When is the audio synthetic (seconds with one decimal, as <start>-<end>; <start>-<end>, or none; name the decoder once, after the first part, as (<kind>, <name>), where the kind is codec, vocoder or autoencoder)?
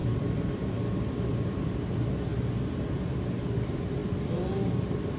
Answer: 0.0-2.3 (vocoder, BigVGAN v2); 3.5-4.0